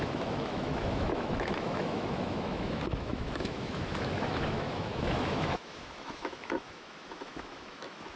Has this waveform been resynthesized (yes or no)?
yes